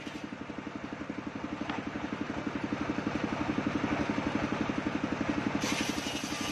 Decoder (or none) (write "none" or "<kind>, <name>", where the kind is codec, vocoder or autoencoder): none